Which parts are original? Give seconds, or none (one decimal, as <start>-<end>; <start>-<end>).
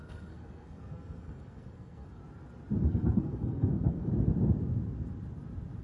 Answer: 2.2-2.8; 4.1-5.8